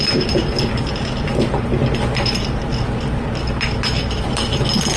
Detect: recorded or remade recorded